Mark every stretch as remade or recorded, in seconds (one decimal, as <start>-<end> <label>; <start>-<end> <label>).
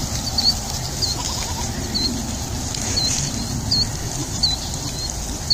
0.0-0.6 remade; 0.6-2.8 recorded; 2.8-3.4 remade; 3.4-4.2 recorded; 4.2-4.8 remade; 4.8-5.5 recorded